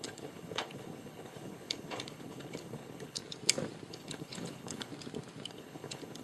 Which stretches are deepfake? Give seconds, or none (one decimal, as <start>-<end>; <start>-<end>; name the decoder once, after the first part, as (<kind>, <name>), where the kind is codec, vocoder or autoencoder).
0.0-3.2 (codec, HILCodec); 3.9-4.9; 5.5-6.2